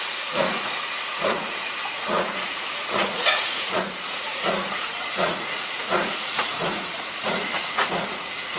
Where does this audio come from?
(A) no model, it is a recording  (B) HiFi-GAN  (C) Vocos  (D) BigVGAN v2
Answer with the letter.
C